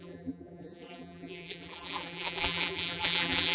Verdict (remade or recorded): remade